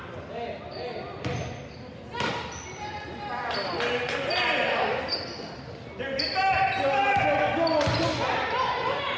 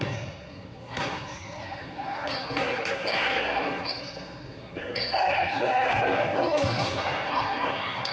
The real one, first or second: first